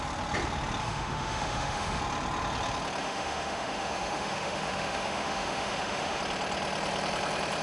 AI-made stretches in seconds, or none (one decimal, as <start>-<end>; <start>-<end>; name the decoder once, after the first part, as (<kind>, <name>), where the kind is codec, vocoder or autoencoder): 0.8-2.0 (autoencoder, DAC-VAE); 3.0-6.2